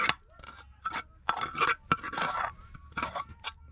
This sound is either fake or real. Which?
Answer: real